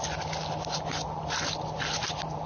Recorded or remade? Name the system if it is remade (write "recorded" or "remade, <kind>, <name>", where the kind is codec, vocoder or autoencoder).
recorded